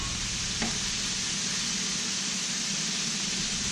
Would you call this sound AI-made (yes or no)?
no